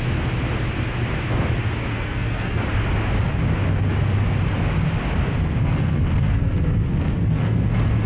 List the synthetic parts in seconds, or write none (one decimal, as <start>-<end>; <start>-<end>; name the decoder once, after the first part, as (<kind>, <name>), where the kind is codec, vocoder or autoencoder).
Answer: 1.9-2.6 (codec, SNAC); 5.6-8.1